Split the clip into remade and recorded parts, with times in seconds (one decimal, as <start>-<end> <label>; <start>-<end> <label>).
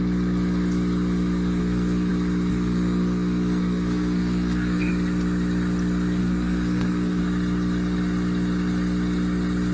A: 0.0-1.6 recorded; 1.6-2.1 remade; 2.1-2.5 recorded; 2.5-4.9 remade; 4.9-6.2 recorded; 6.2-7.2 remade; 7.2-9.7 recorded